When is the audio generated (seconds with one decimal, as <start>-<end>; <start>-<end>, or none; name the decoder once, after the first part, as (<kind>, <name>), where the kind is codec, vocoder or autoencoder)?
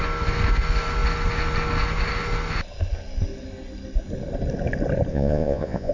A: 5.1-5.9 (vocoder, Vocos)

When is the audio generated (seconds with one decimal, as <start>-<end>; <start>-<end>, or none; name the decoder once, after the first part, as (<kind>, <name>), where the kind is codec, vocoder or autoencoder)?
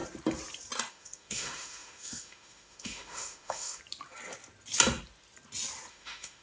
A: 0.9-3.8 (autoencoder, DAC-VAE); 5.9-6.4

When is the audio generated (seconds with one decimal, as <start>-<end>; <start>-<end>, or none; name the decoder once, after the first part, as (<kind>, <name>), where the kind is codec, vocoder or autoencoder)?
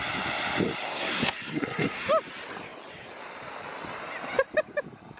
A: 0.9-2.1 (codec, SNAC)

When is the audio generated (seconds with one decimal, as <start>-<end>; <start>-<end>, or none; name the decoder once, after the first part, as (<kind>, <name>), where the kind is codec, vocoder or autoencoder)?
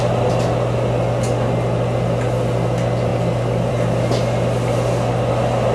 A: none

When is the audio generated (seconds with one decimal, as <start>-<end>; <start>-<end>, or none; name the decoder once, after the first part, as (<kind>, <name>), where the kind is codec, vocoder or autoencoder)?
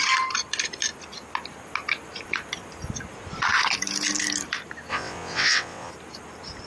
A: 4.9-5.9 (vocoder, WaveNeXt)